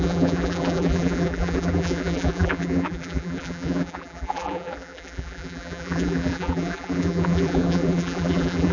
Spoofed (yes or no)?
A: yes